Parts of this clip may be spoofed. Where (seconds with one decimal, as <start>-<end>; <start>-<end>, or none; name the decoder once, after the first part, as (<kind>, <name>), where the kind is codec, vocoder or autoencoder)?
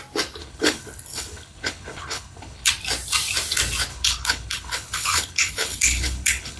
0.4-2.7 (codec, HILCodec); 3.9-6.6